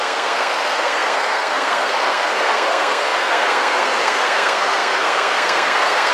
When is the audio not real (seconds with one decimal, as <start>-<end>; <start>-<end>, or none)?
0.0-6.1